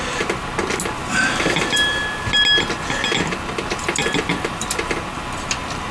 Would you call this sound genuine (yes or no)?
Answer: yes